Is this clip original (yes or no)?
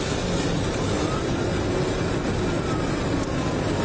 yes